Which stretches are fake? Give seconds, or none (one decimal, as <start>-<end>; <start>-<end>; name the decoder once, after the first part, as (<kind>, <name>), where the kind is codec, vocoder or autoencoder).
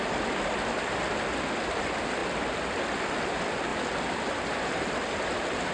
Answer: none